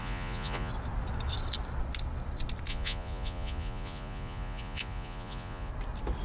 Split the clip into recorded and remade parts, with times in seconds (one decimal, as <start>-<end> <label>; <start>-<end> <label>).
0.0-0.7 remade; 0.7-2.7 recorded; 2.7-5.7 remade; 5.7-6.2 recorded